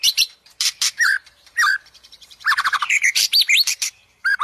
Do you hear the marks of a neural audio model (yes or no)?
yes